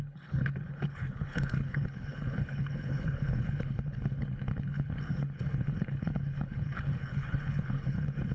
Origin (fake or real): fake